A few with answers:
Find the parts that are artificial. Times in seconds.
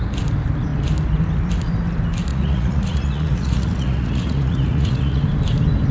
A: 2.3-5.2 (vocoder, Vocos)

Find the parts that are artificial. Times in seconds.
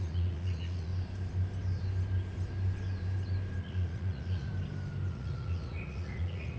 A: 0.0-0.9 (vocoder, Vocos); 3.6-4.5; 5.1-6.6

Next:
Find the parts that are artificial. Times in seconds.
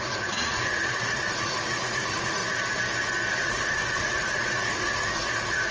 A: 0.0-2.4 (vocoder, Vocos); 3.4-5.7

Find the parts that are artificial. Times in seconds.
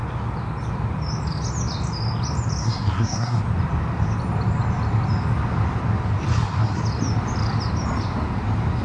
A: 2.6-3.4 (codec, SNAC); 6.3-6.8